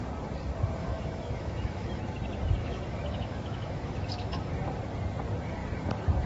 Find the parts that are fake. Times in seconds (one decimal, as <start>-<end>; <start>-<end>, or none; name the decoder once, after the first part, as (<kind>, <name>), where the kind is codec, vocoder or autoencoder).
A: 0.8-2.0 (autoencoder, DAC-VAE); 2.6-4.5